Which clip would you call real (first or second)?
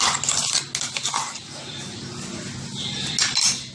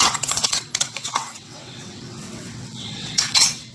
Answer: first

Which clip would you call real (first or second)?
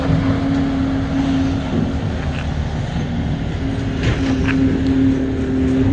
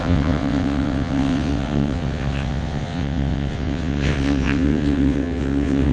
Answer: first